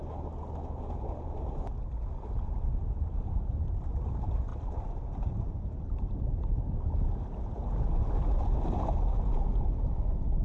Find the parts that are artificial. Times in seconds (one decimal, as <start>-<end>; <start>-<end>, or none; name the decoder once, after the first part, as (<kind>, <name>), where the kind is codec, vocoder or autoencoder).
none